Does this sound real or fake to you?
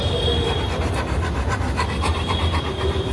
real